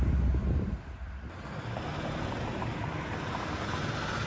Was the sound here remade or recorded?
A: recorded